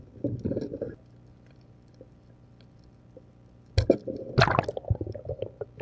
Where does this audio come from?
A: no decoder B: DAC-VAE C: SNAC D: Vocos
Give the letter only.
A